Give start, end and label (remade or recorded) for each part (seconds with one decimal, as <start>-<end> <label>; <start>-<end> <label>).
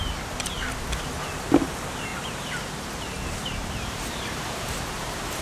0.0-2.1 recorded; 2.1-5.4 remade